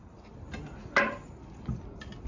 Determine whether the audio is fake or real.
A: real